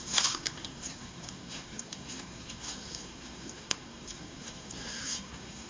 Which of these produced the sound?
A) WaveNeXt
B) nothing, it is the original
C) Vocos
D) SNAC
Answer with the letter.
D